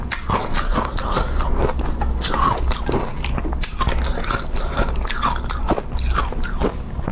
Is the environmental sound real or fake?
real